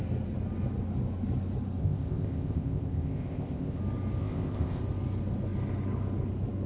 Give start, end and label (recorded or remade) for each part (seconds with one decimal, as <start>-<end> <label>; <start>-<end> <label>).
0.0-1.8 recorded; 1.8-3.8 remade; 3.8-4.2 recorded; 4.2-4.8 remade; 4.8-6.7 recorded